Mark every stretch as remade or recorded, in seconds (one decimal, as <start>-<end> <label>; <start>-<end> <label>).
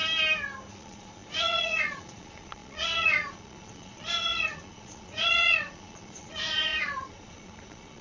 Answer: 0.0-0.7 recorded; 0.7-8.0 remade